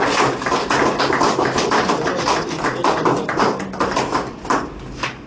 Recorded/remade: recorded